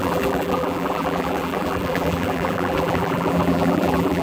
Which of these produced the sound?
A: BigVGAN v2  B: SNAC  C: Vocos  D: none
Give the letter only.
A